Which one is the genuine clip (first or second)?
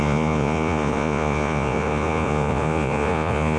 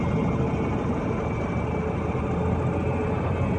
second